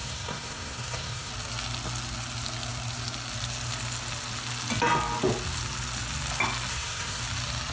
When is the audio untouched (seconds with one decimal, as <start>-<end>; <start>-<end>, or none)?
1.3-6.7; 7.2-7.7